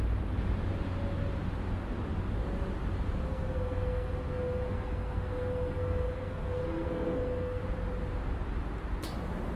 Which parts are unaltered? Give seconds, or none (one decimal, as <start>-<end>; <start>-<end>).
0.0-3.3; 7.6-9.6